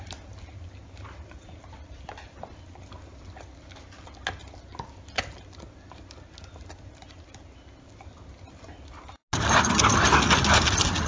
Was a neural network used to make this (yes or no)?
no